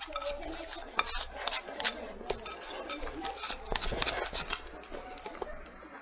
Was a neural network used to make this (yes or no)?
no